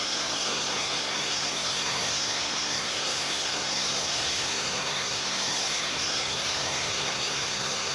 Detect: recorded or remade remade